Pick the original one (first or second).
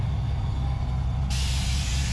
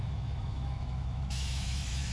first